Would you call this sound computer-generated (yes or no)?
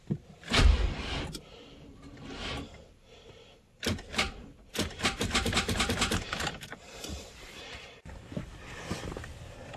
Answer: yes